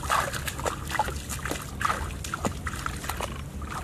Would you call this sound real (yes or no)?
yes